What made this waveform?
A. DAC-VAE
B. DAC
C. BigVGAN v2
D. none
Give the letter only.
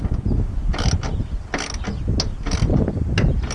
D